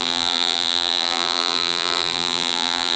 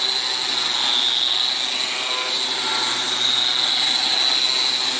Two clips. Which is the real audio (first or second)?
second